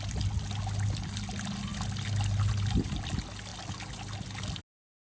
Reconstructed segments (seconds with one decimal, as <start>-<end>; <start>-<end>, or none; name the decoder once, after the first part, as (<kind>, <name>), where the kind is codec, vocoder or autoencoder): none